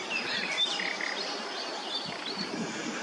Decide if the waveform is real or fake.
real